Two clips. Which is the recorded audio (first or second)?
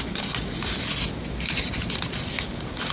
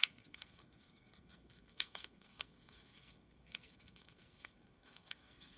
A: first